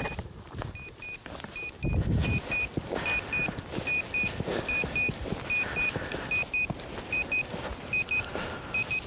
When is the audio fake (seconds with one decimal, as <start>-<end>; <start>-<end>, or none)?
none